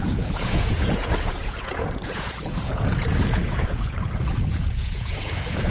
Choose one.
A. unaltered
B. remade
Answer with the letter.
B